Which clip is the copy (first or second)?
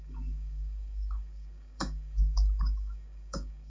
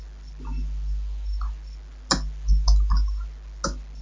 first